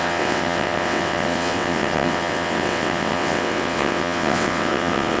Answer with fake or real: fake